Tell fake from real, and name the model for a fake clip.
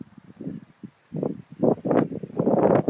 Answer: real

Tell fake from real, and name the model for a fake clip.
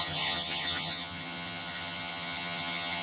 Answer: fake, vocoder, HiFi-GAN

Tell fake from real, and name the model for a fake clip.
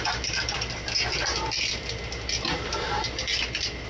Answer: real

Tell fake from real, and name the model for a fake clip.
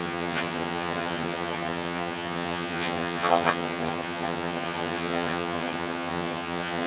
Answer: fake, vocoder, HiFi-GAN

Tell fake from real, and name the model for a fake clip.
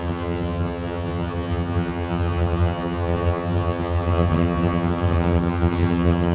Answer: fake, vocoder, HiFi-GAN